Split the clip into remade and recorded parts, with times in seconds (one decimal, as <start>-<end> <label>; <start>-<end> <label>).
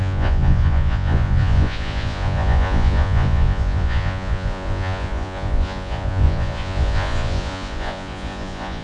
0.0-8.8 remade